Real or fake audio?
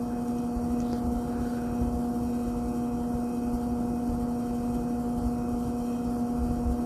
real